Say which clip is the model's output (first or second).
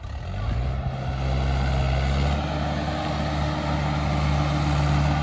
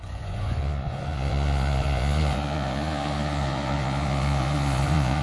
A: second